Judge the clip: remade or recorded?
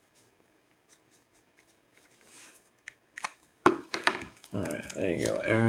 remade